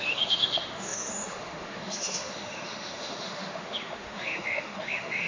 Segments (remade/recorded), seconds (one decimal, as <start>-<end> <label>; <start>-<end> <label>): 0.0-5.3 remade